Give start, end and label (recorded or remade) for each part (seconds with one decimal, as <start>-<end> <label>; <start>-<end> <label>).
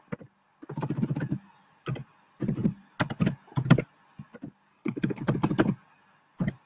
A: 0.0-4.7 recorded; 4.7-5.2 remade; 5.2-6.7 recorded